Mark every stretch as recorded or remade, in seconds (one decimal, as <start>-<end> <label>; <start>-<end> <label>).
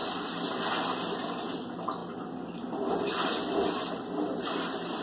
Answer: 0.0-5.0 recorded